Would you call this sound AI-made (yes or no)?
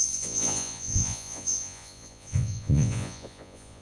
yes